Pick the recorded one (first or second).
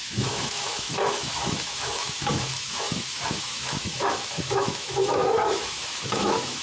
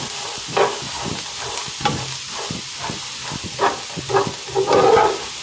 second